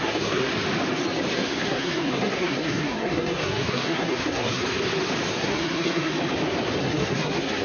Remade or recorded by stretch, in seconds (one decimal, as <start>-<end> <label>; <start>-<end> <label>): 0.0-0.5 remade; 0.5-1.3 recorded; 1.3-4.6 remade; 4.6-5.3 recorded; 5.3-6.1 remade; 6.1-6.8 recorded; 6.8-7.6 remade